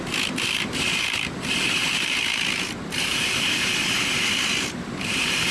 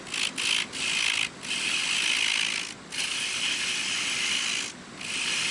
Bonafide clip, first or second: second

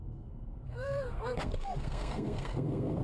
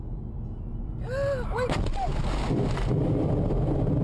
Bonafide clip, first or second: second